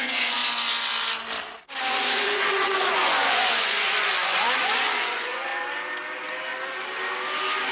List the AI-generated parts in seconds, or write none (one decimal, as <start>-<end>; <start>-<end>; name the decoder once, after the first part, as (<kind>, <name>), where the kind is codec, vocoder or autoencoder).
0.0-0.4 (vocoder, Vocos); 1.8-5.5